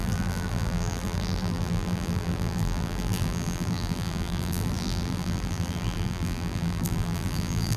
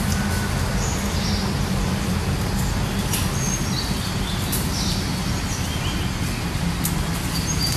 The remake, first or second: first